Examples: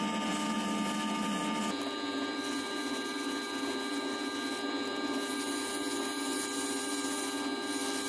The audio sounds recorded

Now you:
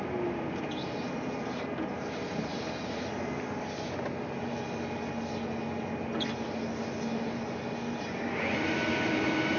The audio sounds recorded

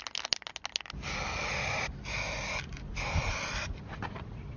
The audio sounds recorded